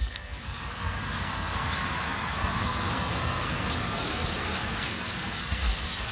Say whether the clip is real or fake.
fake